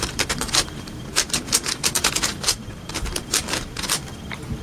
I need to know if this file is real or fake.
fake